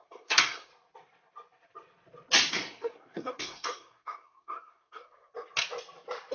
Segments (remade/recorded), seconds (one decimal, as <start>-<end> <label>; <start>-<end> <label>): 0.0-0.7 remade; 0.7-2.5 recorded; 2.5-5.3 remade; 5.3-6.3 recorded